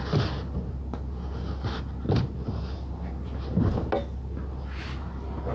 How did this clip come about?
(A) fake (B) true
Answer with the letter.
B